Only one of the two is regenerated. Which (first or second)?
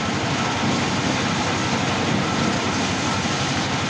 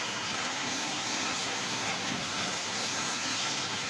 second